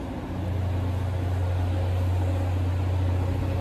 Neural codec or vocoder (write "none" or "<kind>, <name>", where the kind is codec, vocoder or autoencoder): none